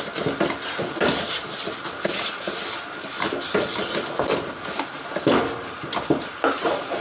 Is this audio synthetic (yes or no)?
no